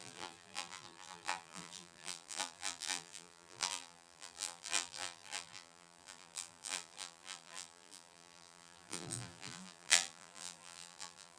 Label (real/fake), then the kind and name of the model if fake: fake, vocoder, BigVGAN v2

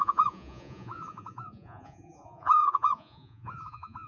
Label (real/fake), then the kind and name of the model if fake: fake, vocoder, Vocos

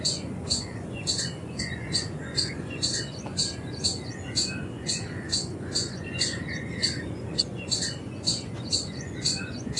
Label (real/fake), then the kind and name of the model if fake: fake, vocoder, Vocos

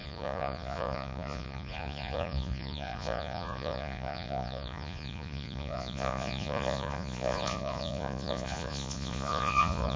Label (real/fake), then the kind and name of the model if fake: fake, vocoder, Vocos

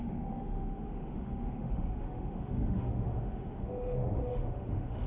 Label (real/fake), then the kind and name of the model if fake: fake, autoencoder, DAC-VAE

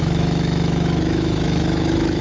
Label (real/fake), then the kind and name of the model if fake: fake, autoencoder, DAC-VAE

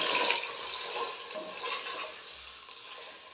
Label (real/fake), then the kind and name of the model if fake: real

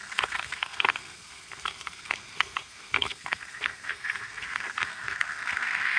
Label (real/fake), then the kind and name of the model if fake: fake, codec, SNAC